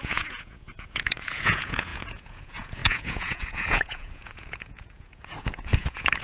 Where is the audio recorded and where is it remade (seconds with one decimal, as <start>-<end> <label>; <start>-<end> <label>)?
0.0-6.2 remade